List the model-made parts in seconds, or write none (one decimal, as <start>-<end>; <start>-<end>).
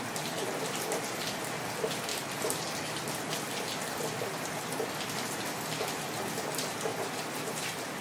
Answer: none